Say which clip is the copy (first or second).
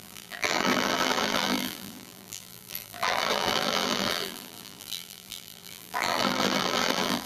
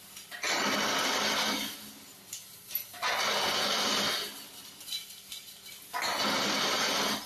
first